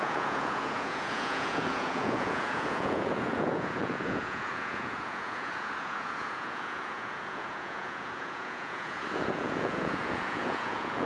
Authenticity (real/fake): fake